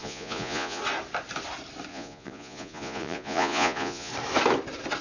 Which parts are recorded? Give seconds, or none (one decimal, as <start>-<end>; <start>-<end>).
0.8-1.9; 4.1-5.0